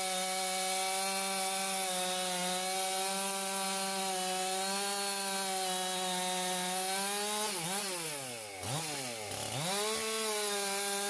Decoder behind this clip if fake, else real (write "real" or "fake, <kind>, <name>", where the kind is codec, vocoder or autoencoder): real